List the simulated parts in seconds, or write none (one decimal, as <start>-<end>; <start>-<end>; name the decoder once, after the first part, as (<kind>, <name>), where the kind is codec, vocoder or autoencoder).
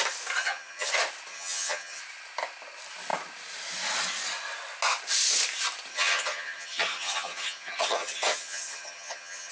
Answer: 0.4-0.9 (vocoder, HiFi-GAN); 1.3-2.0; 5.9-9.5